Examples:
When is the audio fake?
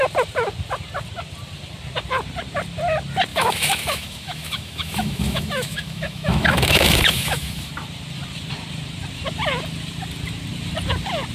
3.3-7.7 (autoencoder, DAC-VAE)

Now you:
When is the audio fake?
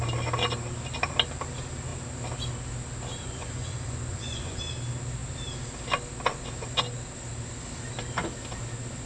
3.1-4.6 (vocoder, Vocos)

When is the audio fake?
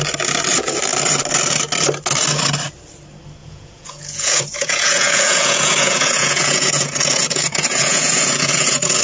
3.4-9.0 (vocoder, Vocos)